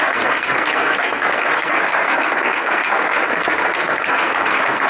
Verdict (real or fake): fake